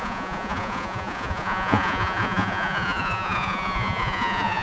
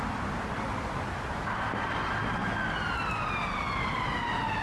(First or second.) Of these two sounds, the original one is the second